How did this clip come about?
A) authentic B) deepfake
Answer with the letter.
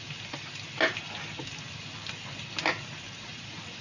A